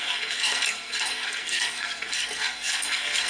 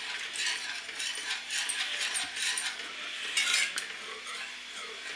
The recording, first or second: second